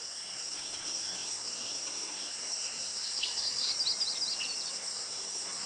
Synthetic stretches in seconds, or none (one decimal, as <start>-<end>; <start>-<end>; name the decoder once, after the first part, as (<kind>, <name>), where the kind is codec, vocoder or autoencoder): 0.0-3.7 (codec, SNAC); 4.7-5.7